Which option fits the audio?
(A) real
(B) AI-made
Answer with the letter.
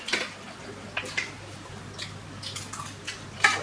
A